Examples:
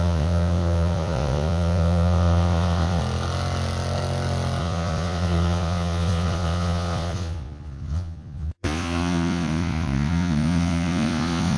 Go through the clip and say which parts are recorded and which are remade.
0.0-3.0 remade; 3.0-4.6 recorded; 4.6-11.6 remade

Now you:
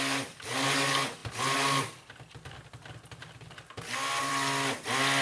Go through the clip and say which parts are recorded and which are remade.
0.0-5.2 recorded

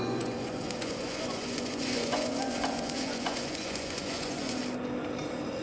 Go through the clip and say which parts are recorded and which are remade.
0.0-4.6 remade; 4.6-5.6 recorded